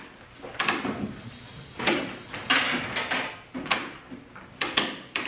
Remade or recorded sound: recorded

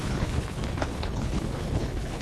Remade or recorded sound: remade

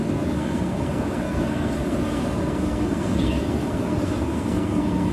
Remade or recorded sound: remade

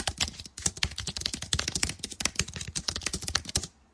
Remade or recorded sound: recorded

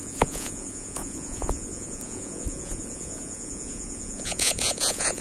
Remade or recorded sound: remade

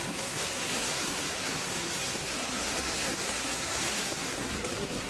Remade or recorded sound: remade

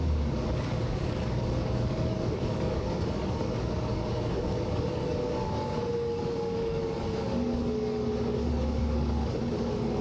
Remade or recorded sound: remade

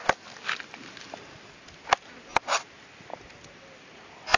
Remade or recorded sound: recorded